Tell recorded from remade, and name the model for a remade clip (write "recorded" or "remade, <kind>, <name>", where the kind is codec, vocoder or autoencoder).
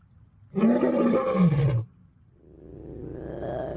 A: recorded